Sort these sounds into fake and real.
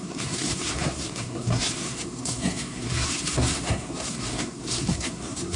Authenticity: fake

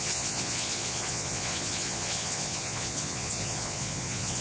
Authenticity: fake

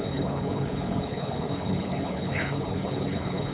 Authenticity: fake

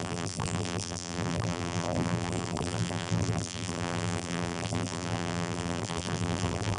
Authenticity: fake